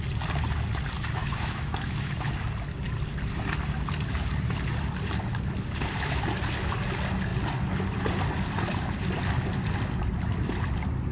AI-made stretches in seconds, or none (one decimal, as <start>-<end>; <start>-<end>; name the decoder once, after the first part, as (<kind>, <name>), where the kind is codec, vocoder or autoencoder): 1.2-2.3 (autoencoder, DAC-VAE)